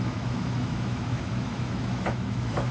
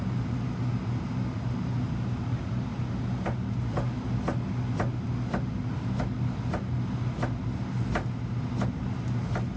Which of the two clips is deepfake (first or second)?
first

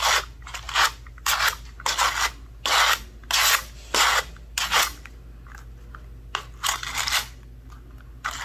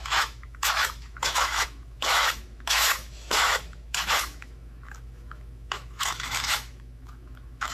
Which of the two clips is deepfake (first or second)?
second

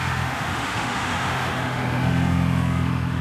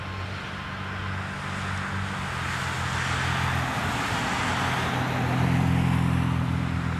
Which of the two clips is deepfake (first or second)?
first